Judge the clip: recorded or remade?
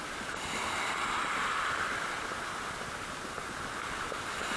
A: recorded